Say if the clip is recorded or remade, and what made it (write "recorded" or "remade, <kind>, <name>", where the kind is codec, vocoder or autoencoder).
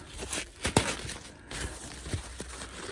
recorded